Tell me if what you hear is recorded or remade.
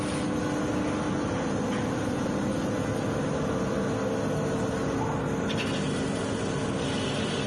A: recorded